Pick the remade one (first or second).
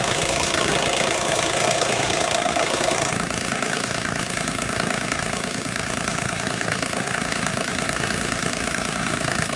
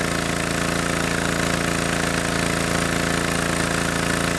first